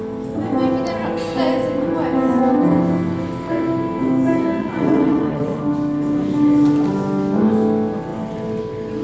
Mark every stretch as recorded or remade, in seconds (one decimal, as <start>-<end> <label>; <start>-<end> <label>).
0.0-4.6 recorded; 4.6-5.6 remade; 5.6-9.0 recorded